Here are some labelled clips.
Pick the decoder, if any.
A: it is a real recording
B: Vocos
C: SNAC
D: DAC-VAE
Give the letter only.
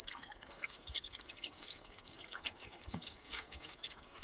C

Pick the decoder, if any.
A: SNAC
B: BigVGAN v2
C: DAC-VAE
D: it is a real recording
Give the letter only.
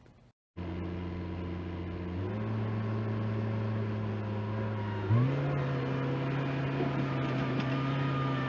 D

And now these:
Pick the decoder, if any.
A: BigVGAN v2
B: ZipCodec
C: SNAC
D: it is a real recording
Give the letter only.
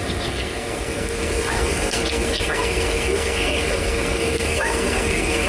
C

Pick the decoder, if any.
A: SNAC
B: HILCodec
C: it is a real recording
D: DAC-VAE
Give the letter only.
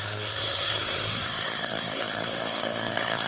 A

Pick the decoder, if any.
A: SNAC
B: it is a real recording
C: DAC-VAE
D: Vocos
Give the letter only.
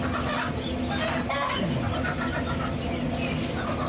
B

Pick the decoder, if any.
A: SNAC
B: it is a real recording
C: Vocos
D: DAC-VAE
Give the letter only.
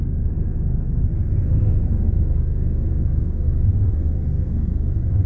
A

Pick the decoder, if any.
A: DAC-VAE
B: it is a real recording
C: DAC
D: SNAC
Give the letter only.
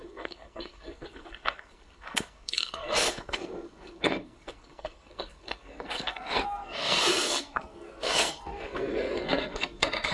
D